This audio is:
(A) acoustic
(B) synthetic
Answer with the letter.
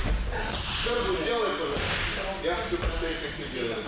A